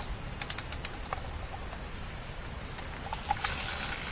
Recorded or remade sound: recorded